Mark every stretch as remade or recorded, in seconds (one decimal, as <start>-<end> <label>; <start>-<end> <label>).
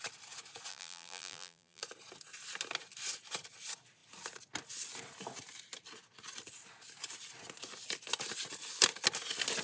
0.0-0.7 recorded; 0.7-1.8 remade; 1.8-9.6 recorded